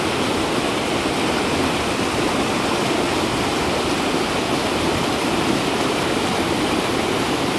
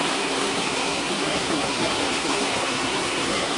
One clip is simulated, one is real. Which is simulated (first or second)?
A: second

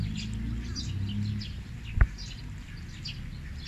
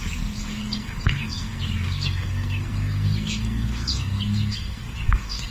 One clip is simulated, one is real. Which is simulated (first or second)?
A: second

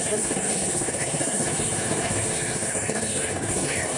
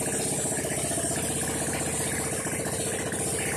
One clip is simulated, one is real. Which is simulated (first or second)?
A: first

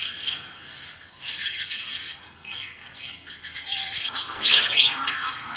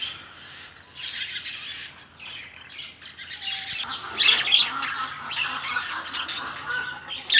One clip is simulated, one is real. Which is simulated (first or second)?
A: first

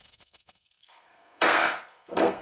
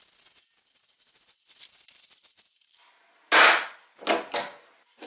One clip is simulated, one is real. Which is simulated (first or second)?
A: first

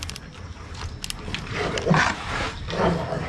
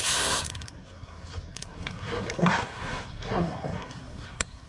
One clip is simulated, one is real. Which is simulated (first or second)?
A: second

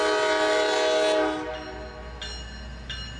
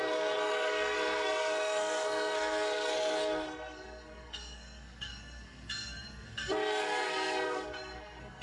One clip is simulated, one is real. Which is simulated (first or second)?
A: second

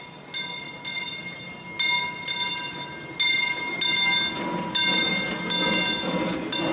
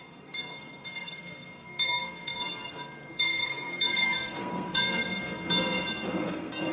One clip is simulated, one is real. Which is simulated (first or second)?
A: second